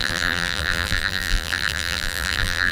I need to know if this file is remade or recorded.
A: remade